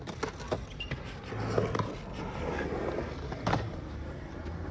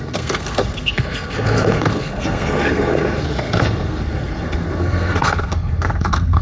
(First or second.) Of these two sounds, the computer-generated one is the second